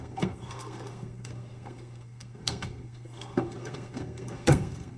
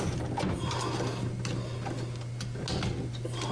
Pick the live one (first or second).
second